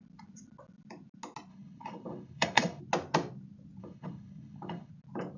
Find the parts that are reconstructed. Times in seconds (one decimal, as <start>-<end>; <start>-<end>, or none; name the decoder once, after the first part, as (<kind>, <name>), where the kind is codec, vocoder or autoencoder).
1.5-2.8 (codec, HILCodec); 3.8-4.9